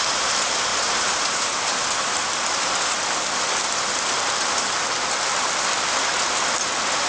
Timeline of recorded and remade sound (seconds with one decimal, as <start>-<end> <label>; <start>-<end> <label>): 0.0-0.7 recorded; 0.7-3.1 remade; 3.1-7.1 recorded